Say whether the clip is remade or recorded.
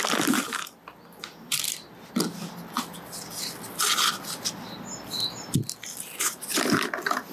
recorded